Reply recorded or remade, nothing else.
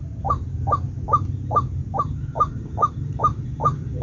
recorded